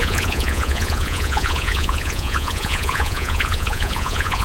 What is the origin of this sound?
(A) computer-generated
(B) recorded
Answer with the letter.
A